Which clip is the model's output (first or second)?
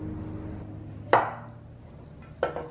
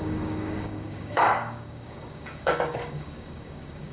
second